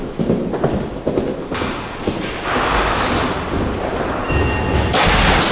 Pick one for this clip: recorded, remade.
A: recorded